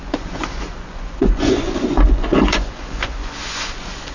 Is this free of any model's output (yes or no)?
no